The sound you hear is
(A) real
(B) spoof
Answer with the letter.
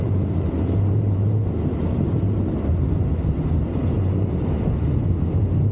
A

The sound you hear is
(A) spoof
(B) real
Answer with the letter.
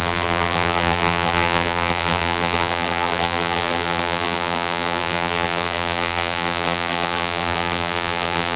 A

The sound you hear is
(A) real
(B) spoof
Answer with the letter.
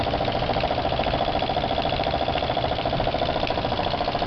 A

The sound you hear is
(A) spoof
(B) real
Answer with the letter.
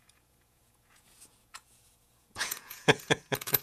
A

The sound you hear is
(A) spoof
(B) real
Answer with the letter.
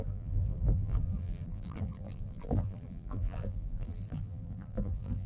A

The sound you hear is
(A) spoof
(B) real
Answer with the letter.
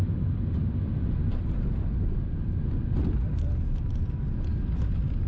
B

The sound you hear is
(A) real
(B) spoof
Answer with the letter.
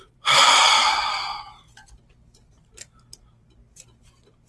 B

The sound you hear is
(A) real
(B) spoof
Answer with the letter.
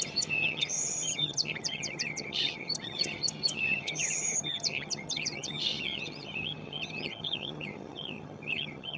B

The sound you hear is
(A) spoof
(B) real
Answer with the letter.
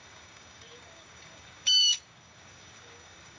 A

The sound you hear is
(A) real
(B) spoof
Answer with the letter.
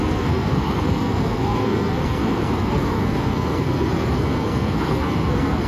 B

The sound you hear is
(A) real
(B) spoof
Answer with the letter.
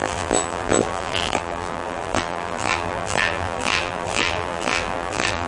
B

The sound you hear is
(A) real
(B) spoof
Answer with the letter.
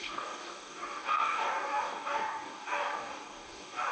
B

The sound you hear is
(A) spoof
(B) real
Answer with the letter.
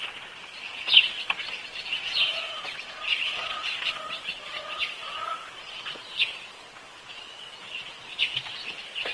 A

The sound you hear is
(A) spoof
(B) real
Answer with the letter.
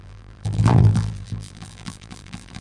A